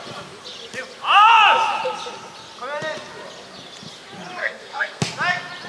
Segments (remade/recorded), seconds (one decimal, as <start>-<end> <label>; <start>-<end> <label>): 0.0-4.4 recorded; 4.4-5.0 remade; 5.0-5.7 recorded